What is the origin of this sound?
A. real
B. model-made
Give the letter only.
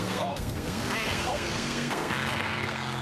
B